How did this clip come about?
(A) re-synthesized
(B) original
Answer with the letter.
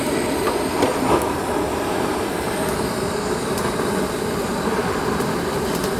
A